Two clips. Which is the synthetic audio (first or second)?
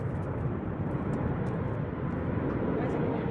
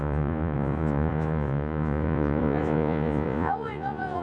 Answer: second